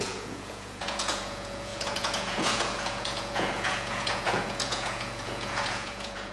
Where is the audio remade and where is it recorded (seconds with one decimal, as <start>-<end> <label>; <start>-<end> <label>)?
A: 0.0-6.3 remade